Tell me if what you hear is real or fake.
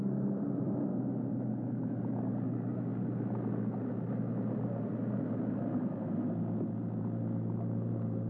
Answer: real